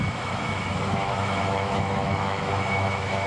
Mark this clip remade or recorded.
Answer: remade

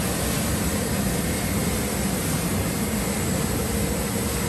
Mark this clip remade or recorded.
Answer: recorded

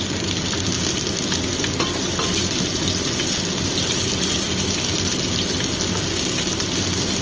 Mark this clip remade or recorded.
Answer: recorded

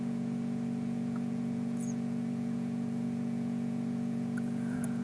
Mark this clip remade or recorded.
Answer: remade